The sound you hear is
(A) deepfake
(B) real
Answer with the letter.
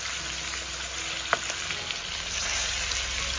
B